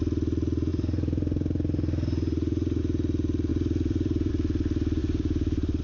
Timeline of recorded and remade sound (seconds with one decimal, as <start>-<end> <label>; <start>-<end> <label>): 0.0-0.7 recorded; 0.7-2.8 remade; 2.8-3.5 recorded; 3.5-4.3 remade; 4.3-5.0 recorded; 5.0-5.8 remade

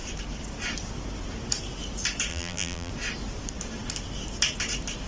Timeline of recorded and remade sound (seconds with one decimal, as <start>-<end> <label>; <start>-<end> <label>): 0.0-2.3 recorded; 2.3-2.9 remade; 2.9-5.1 recorded

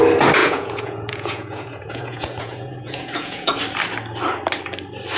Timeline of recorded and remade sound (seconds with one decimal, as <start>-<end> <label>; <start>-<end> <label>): 0.0-0.4 recorded; 0.4-3.5 remade; 3.5-5.2 recorded

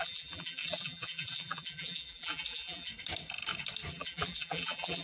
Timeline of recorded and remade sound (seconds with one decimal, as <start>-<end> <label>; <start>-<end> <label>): 0.0-2.9 remade; 2.9-3.9 recorded; 3.9-5.0 remade